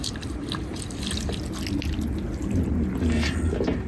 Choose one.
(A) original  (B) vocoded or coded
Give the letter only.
A